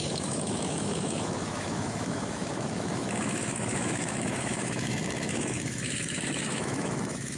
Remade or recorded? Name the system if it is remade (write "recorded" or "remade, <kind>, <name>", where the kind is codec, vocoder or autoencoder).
remade, autoencoder, DAC-VAE